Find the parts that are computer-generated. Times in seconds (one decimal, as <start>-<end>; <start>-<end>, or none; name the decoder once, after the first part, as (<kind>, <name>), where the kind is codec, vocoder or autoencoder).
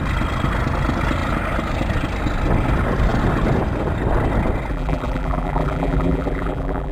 4.7-6.9 (vocoder, BigVGAN v2)